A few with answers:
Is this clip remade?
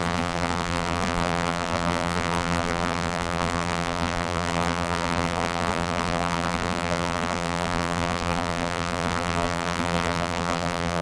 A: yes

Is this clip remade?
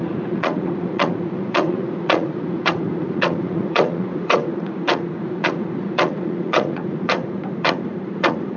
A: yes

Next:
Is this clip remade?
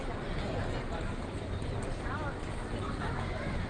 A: no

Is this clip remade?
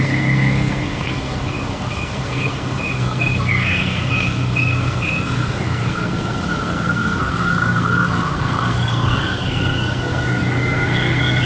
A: yes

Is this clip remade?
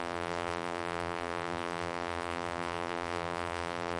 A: yes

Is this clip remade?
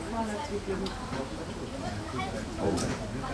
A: no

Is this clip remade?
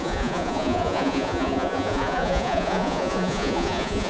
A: yes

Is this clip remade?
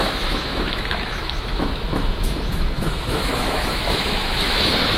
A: yes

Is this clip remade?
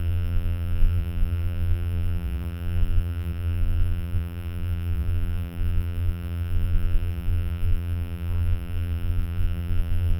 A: yes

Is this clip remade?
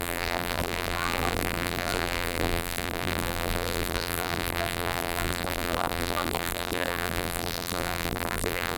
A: yes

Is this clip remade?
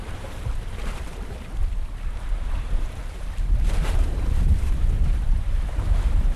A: yes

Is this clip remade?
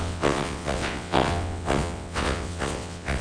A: yes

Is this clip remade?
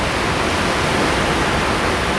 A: no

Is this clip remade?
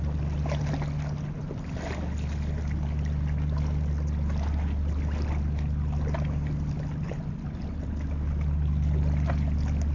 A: no